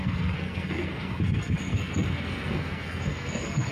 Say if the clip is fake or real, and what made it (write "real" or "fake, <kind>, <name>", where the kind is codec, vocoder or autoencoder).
fake, codec, SNAC